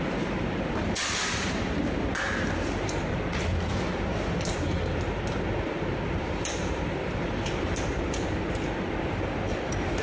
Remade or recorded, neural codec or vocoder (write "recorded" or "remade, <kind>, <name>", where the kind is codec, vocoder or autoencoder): remade, vocoder, BigVGAN v2